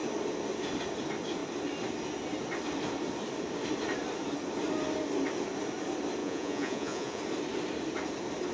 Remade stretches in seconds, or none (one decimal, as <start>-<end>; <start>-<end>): 6.2-7.2